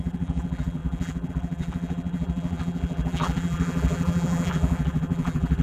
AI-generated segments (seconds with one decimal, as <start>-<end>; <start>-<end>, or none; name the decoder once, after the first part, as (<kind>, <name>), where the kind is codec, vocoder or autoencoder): 0.0-5.6 (vocoder, BigVGAN v2)